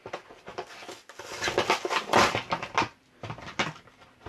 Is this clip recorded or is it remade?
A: recorded